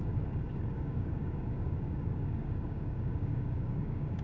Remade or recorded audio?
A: remade